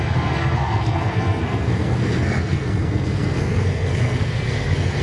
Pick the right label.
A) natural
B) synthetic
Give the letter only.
B